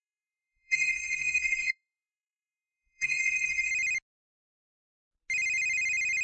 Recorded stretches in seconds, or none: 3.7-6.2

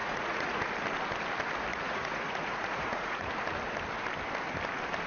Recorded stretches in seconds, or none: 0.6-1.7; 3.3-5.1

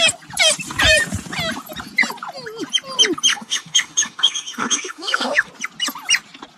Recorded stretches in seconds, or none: 0.0-3.3; 5.5-6.6